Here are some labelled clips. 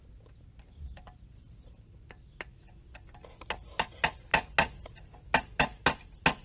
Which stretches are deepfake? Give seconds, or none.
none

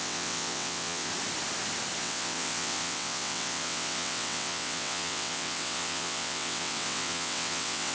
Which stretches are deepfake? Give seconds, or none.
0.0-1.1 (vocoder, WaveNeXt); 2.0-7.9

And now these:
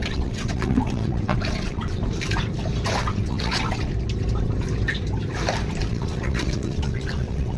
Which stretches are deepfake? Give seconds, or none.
0.0-2.0 (vocoder, WaveNeXt); 3.0-3.9; 5.9-7.6

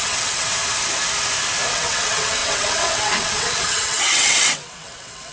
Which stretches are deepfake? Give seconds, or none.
0.0-0.5 (vocoder, WaveNeXt); 1.7-5.3